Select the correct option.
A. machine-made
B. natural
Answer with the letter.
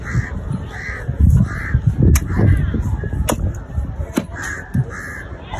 B